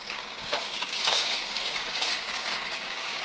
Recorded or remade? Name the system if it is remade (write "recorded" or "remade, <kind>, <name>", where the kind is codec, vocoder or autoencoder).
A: remade, codec, DAC